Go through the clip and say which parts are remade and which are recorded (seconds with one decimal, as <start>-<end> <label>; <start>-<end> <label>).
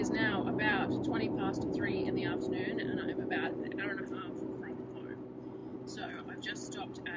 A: 0.0-7.2 recorded